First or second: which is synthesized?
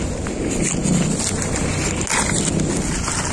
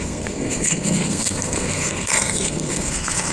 second